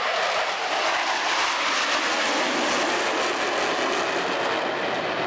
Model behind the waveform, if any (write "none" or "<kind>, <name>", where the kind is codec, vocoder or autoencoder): none